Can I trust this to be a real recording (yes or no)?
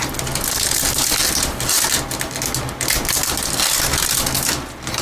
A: yes